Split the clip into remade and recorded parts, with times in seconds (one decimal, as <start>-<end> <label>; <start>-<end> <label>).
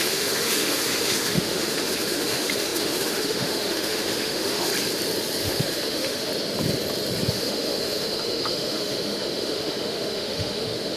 0.0-4.7 remade; 4.7-5.4 recorded; 5.4-6.3 remade; 6.3-7.3 recorded; 7.3-11.0 remade